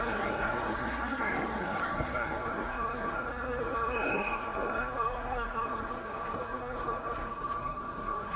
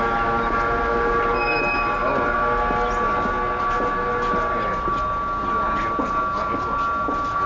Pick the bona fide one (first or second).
second